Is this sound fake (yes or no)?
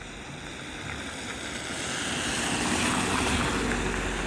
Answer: no